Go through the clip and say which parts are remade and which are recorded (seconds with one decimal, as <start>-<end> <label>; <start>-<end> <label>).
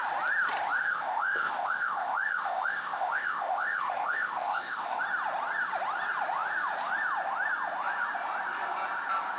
0.0-0.8 recorded; 0.8-5.0 remade; 5.0-9.4 recorded